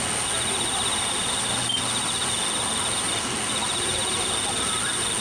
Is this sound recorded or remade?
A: recorded